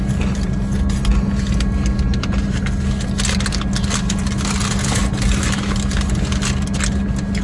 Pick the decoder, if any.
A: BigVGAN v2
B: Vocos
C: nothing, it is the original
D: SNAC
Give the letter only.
C